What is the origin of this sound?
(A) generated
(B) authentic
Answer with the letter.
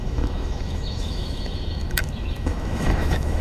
A